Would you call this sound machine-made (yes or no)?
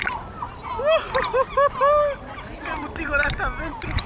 no